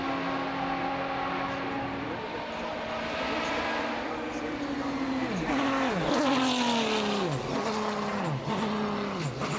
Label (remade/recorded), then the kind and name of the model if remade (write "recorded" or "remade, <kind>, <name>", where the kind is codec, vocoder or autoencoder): recorded